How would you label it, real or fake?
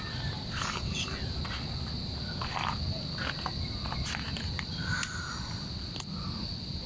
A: real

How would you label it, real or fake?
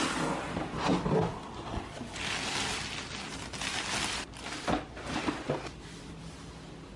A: real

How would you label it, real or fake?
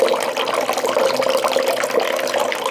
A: real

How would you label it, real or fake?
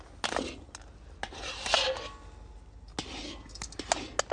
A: real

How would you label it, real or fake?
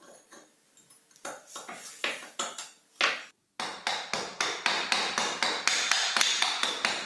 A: real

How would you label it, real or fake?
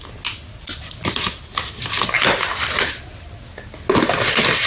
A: real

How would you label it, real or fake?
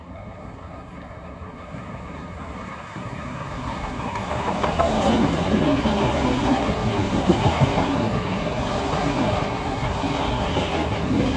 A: fake